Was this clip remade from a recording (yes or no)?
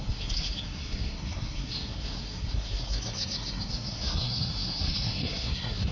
yes